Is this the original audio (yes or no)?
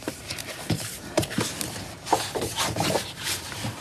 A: no